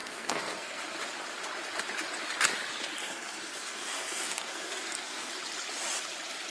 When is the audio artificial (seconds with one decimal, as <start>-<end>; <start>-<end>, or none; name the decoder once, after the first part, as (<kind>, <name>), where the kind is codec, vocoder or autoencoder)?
0.0-0.8 (codec, SNAC); 3.0-5.3